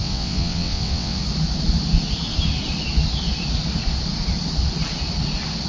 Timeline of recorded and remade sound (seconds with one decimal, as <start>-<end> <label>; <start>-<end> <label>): 0.0-1.2 remade; 1.2-5.7 recorded

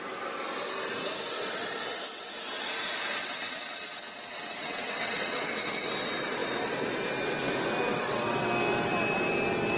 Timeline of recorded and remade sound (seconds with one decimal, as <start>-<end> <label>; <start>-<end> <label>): 0.0-3.2 recorded; 3.2-5.9 remade; 5.9-7.9 recorded; 7.9-8.5 remade; 8.5-9.8 recorded

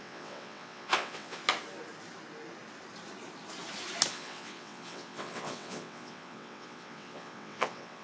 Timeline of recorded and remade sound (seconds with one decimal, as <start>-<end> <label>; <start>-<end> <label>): 0.0-1.4 remade; 1.4-4.1 recorded; 4.1-8.0 remade

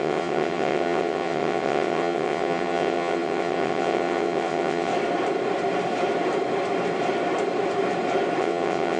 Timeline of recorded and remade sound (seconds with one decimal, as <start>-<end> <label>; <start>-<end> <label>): 0.0-4.9 remade; 4.9-8.4 recorded; 8.4-9.0 remade